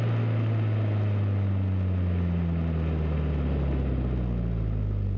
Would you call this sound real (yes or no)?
yes